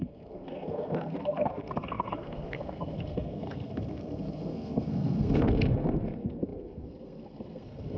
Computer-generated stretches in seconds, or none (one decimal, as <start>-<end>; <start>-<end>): 0.0-8.0